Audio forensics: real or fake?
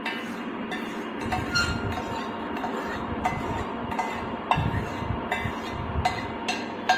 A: real